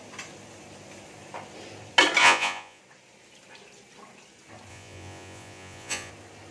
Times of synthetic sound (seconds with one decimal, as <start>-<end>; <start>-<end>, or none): 2.2-2.8; 4.7-6.1